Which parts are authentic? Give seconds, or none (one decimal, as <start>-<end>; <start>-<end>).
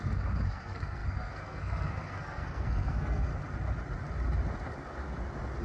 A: 3.3-5.6